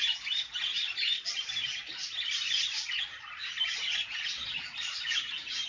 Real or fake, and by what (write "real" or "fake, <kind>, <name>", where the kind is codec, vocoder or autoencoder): real